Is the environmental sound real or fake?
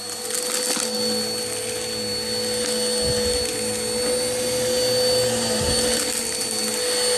real